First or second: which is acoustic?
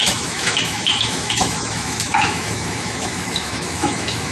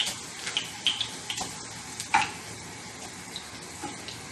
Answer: second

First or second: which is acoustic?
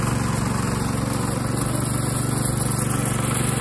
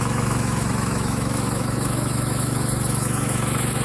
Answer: first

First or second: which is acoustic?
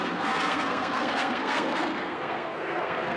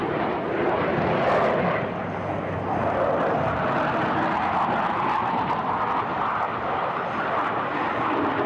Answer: second